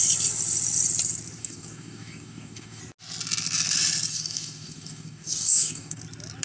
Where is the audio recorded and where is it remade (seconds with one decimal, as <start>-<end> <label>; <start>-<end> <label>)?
0.0-1.4 recorded; 1.4-2.8 remade; 2.8-4.1 recorded; 4.1-6.0 remade; 6.0-6.4 recorded